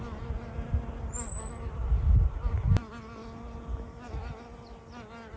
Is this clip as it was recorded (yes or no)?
yes